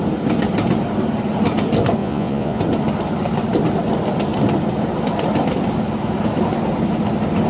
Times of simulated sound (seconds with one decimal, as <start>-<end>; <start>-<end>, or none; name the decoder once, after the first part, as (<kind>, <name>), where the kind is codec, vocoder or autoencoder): 2.0-2.6 (vocoder, Vocos)